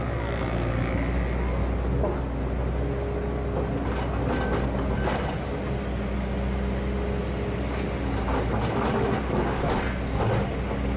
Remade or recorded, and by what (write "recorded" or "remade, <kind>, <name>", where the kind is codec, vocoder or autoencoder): recorded